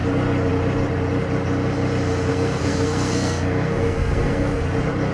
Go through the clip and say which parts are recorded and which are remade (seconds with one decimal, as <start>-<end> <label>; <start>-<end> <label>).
0.0-2.3 recorded; 2.3-4.6 remade; 4.6-5.1 recorded